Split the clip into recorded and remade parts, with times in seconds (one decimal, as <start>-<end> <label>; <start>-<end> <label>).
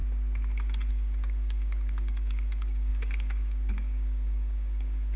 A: 0.0-0.9 recorded; 0.9-5.2 remade